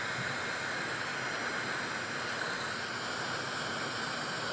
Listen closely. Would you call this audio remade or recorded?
recorded